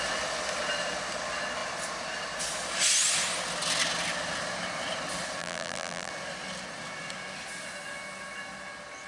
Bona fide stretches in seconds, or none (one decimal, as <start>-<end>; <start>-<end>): 0.0-5.4; 6.1-9.1